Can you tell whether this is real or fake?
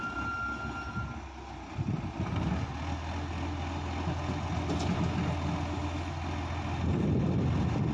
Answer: real